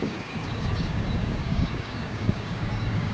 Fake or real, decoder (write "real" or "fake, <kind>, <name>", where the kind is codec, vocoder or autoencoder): fake, codec, DAC